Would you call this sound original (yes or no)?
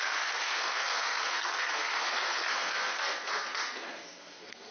no